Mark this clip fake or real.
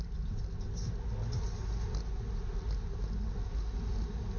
real